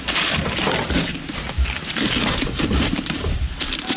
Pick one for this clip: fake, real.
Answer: fake